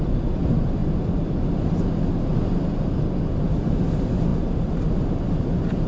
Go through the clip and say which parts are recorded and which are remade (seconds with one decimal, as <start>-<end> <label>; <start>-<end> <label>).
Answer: 0.0-0.8 remade; 0.8-3.5 recorded; 3.5-4.3 remade; 4.3-5.3 recorded; 5.3-5.9 remade